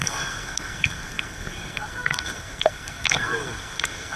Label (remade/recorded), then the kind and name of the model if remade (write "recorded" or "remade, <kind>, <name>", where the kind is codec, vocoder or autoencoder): remade, codec, SNAC